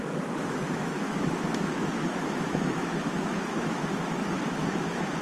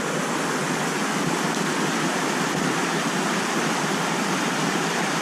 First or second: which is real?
second